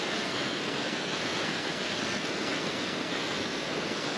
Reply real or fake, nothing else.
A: fake